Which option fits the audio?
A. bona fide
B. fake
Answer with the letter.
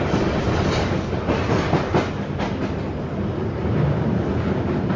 A